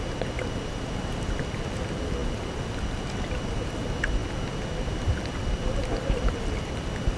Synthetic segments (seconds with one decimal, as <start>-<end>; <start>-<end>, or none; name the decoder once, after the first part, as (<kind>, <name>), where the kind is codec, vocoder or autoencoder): none